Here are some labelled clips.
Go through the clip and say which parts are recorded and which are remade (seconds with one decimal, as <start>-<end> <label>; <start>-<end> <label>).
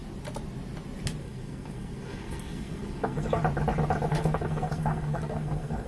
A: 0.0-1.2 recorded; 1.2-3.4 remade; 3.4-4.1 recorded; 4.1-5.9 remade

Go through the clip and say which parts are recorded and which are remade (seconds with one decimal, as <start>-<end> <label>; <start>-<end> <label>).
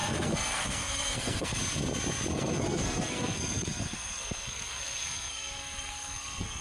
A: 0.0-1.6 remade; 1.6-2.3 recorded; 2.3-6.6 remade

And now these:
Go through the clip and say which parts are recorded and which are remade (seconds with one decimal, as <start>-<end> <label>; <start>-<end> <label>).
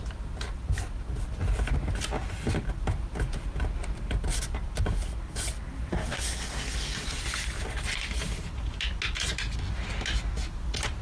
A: 0.0-5.9 recorded; 5.9-7.2 remade; 7.2-11.0 recorded